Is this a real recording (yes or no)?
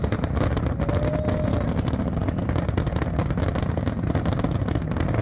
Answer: yes